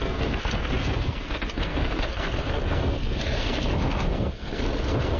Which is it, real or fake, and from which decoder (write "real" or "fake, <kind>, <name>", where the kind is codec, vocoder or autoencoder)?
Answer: fake, codec, SNAC